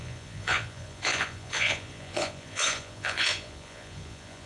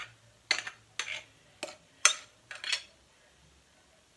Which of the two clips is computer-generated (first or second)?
first